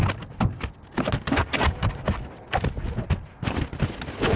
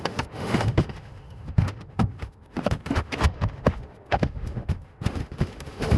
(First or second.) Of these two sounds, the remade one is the second